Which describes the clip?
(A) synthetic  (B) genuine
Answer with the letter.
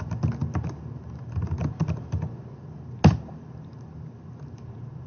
B